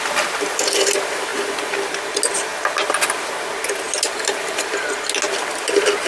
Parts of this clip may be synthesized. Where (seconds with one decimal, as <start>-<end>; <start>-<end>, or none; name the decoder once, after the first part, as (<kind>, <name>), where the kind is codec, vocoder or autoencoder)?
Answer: 1.3-2.1 (vocoder, BigVGAN v2)